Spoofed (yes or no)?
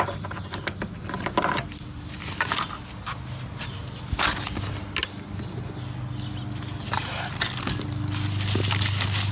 no